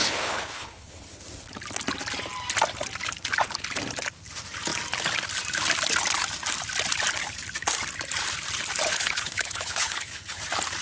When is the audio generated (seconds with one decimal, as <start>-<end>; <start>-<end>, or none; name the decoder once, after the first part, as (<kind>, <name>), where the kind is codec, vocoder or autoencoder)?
0.0-1.2 (codec, HILCodec); 8.9-10.4

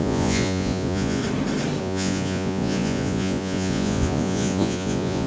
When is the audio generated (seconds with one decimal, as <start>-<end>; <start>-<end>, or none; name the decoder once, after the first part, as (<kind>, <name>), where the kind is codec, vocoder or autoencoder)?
0.0-1.2 (vocoder, Vocos); 1.8-5.3

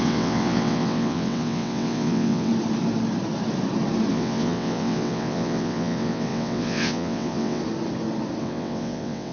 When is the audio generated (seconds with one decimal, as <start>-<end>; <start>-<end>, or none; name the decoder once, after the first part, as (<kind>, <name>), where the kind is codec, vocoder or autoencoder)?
0.0-2.5 (vocoder, WaveNeXt); 4.1-7.6; 8.4-9.3

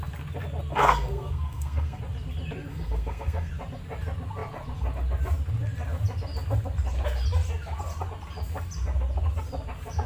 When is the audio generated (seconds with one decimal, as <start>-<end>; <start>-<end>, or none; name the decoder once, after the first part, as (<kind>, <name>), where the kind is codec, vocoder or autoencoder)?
0.7-2.0 (codec, SNAC); 2.7-3.5

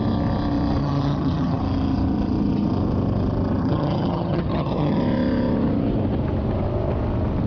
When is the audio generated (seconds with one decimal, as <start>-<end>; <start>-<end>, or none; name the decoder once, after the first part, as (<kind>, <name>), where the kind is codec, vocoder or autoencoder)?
0.8-1.6 (vocoder, HiFi-GAN); 3.6-5.0

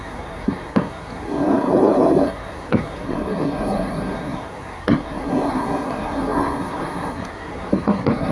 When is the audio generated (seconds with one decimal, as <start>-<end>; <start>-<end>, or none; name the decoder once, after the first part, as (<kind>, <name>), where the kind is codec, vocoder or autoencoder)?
0.0-8.3 (codec, SNAC)

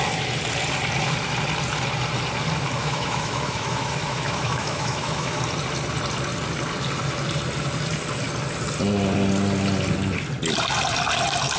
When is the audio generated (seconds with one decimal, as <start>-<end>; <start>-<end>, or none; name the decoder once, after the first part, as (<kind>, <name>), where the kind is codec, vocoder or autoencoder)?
2.8-5.4 (autoencoder, DAC-VAE)